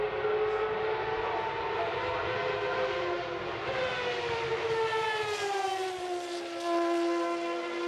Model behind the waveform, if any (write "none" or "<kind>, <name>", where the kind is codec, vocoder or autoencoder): none